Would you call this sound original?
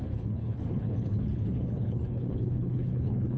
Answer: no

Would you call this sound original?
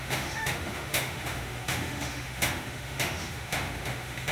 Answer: no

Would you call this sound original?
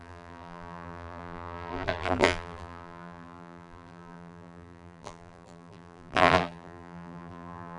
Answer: no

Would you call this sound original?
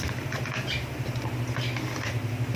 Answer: yes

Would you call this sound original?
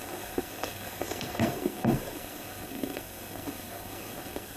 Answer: no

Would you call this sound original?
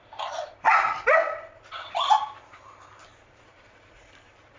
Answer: no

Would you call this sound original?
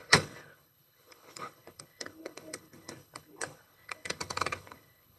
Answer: no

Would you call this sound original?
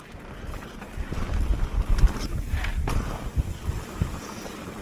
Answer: yes